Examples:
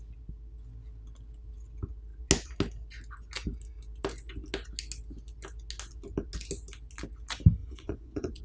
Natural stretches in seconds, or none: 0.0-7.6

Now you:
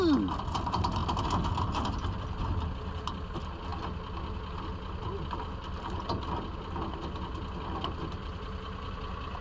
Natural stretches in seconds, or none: 0.0-8.2; 8.9-9.4